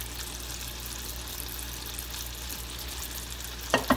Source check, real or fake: real